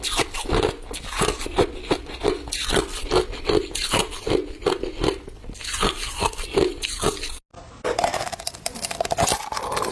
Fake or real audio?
real